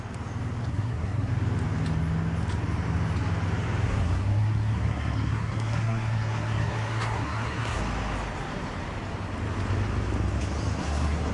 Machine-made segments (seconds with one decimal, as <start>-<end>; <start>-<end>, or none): 0.7-1.3; 3.8-7.8; 10.8-11.3